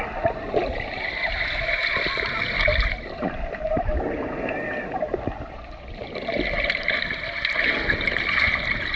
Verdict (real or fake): real